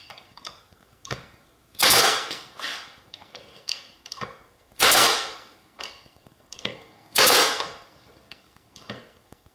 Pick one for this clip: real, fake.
fake